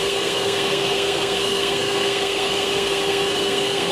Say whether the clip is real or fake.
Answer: fake